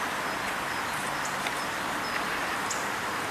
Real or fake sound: real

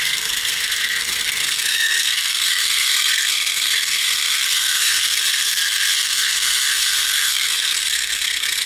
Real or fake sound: fake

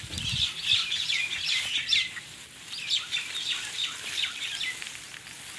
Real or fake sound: real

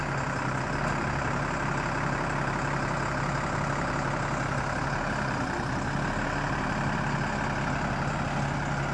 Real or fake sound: real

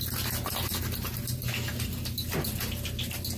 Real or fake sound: real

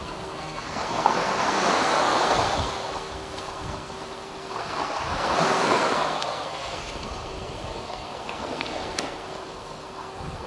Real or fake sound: fake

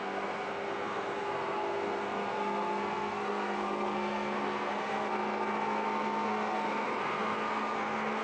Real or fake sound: fake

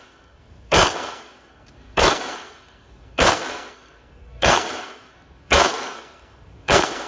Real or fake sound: fake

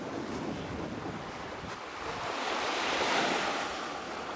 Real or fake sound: real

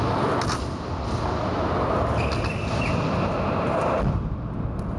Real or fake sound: real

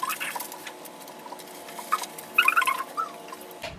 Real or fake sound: real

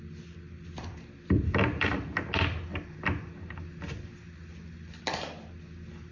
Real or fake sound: real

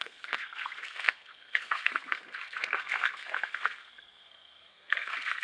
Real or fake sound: fake